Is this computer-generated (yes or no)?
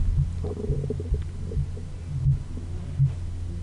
no